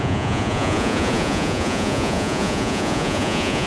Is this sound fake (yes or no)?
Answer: yes